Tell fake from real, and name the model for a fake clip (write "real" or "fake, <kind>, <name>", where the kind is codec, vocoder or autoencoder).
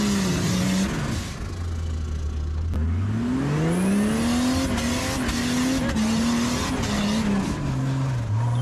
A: real